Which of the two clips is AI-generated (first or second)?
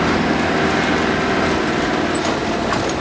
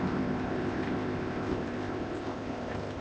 second